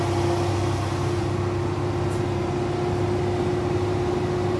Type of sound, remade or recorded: recorded